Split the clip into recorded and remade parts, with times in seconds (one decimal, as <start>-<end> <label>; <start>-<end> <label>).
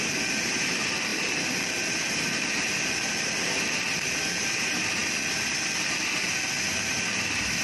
0.0-5.0 remade; 5.0-6.7 recorded; 6.7-7.6 remade